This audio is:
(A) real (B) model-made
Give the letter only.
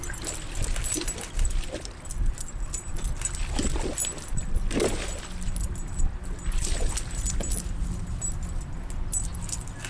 A